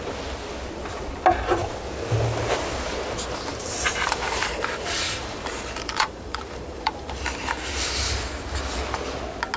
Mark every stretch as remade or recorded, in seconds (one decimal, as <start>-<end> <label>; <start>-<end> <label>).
0.0-3.5 recorded; 3.5-7.2 remade; 7.2-9.6 recorded